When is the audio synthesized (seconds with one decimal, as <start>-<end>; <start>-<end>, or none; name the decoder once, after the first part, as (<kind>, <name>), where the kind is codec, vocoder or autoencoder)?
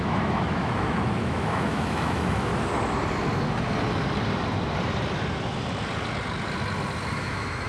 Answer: 0.0-2.5 (autoencoder, DAC-VAE); 7.1-7.7